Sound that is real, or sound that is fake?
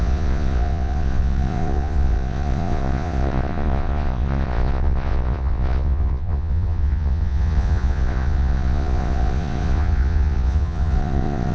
fake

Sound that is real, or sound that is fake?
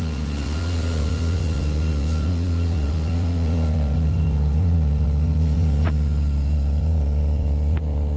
fake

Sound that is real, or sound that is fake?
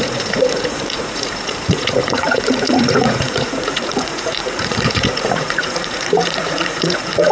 fake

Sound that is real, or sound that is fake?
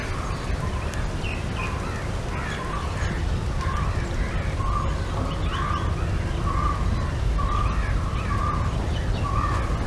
real